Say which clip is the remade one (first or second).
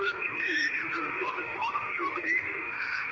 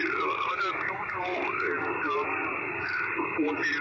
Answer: first